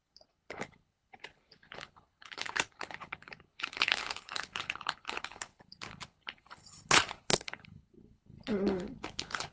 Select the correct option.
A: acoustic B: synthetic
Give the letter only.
B